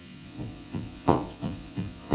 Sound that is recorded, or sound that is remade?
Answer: remade